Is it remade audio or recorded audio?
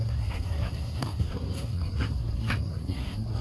remade